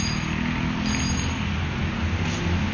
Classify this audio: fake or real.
real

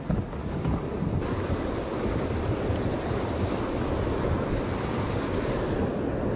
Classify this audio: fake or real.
real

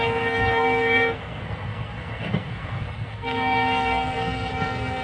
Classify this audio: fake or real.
fake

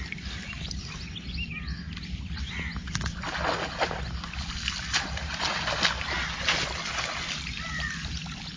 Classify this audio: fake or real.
real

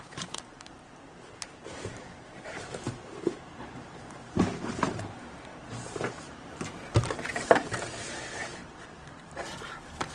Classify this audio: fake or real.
fake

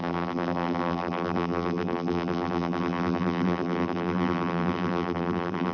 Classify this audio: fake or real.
fake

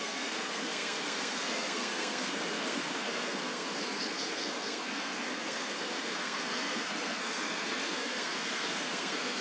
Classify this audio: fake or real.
fake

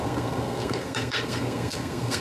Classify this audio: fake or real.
fake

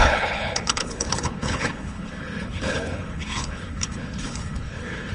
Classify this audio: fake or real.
fake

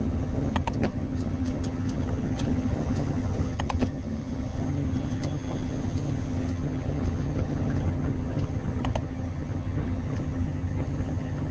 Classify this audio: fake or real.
fake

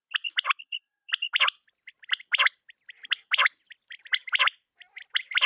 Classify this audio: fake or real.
real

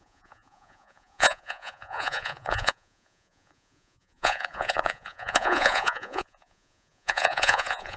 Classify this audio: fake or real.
fake